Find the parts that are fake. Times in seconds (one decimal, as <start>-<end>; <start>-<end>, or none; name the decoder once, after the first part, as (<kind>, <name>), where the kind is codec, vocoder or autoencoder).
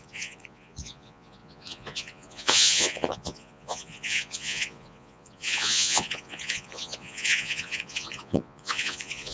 0.0-9.3 (vocoder, Vocos)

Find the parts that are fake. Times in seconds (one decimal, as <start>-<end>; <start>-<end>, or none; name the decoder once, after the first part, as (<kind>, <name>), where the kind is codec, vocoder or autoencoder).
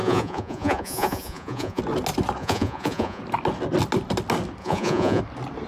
0.0-1.8 (vocoder, Vocos); 2.4-3.2; 4.6-5.2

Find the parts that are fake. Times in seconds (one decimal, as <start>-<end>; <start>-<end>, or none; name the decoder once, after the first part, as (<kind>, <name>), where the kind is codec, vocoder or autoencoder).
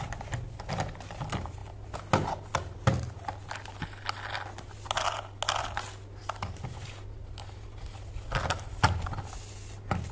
none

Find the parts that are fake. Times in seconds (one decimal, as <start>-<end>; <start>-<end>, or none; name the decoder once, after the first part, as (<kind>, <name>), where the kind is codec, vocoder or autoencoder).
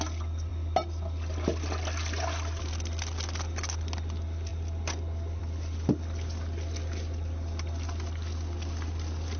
none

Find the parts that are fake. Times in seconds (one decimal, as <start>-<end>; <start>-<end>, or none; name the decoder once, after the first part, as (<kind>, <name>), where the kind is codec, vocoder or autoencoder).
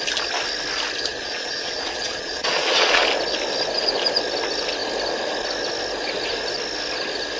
1.1-3.0 (vocoder, Vocos)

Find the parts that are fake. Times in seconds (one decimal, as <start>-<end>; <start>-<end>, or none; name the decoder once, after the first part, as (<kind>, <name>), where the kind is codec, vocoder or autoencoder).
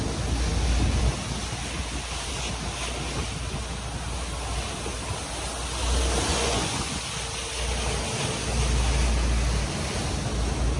6.3-7.0 (vocoder, Vocos)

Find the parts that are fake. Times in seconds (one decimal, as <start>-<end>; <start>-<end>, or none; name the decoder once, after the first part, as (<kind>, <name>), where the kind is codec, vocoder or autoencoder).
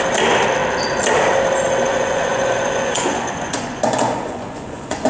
1.9-5.1 (vocoder, Vocos)